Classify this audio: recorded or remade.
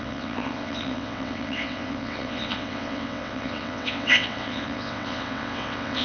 remade